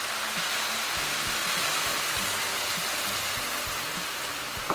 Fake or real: fake